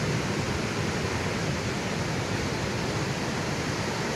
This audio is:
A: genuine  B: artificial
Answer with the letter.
A